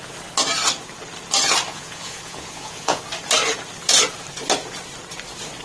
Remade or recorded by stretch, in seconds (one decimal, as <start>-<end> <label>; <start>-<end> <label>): 0.0-1.7 recorded; 1.7-3.0 remade; 3.0-5.6 recorded